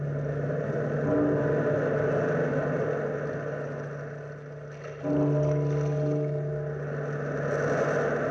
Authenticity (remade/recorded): recorded